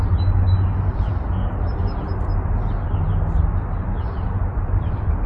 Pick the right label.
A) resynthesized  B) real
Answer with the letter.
B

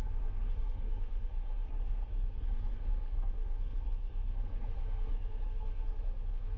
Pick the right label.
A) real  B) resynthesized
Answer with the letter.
B